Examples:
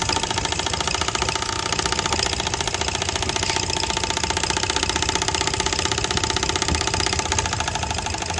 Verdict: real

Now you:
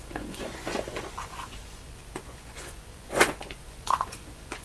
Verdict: fake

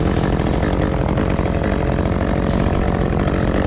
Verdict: real